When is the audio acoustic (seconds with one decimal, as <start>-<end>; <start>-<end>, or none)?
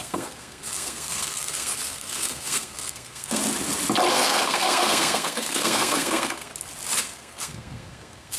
3.4-4.1; 6.5-7.0